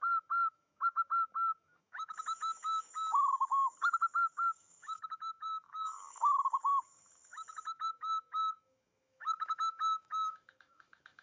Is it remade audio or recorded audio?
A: remade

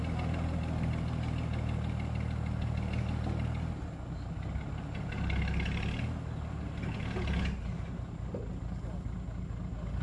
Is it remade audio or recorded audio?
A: recorded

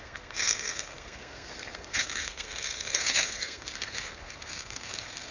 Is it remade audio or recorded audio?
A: remade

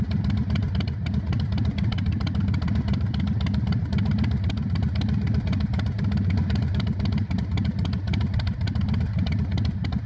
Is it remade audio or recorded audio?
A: remade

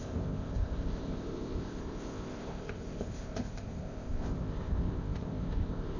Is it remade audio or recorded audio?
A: remade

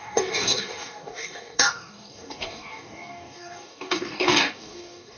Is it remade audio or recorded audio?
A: remade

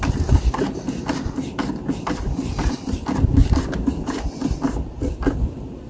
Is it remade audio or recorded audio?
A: recorded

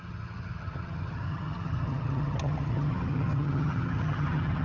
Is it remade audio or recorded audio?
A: remade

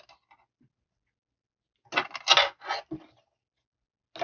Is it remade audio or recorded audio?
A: recorded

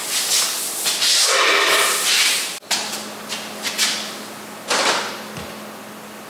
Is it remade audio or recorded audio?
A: recorded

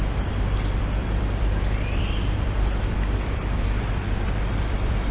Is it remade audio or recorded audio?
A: remade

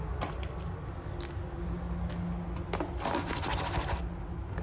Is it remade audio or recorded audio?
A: recorded